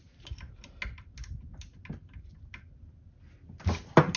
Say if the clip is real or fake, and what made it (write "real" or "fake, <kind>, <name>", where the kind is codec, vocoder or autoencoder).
real